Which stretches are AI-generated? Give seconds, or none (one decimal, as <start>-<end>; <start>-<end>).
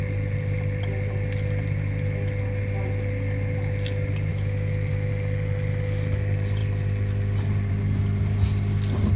4.3-5.1